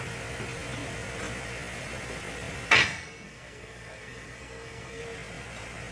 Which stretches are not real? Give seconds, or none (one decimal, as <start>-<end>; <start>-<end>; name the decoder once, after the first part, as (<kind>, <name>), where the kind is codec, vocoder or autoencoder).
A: 2.8-5.0 (codec, SNAC)